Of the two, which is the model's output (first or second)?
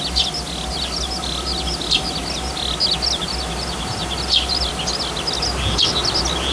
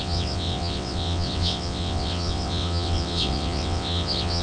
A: second